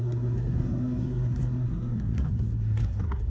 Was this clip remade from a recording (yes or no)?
yes